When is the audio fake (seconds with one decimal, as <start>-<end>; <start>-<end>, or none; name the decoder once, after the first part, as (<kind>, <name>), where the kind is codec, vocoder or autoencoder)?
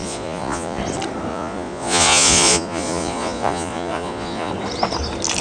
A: 0.0-0.8 (vocoder, Vocos); 1.3-4.5